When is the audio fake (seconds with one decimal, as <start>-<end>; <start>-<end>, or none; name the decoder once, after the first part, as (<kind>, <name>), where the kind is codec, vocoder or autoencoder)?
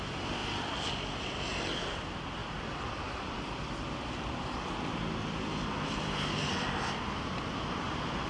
0.4-0.9 (vocoder, BigVGAN v2); 2.4-6.8